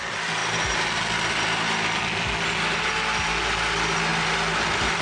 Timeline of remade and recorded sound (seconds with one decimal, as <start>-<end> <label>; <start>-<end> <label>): 0.0-5.0 recorded